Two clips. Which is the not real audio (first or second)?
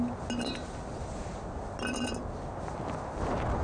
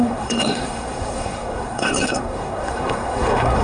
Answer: second